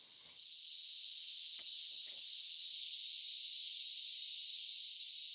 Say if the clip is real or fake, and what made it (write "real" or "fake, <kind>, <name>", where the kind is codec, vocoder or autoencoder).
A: real